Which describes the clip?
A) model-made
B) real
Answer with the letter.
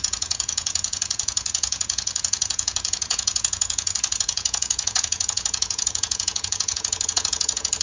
A